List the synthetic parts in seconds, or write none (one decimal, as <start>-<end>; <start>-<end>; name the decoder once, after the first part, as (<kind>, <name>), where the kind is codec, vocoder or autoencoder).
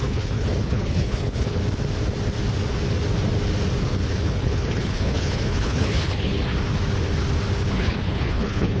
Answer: 0.0-1.6 (codec, HILCodec); 4.1-6.3; 7.7-8.8